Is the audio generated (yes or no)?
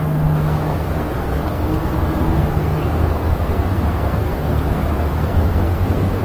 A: yes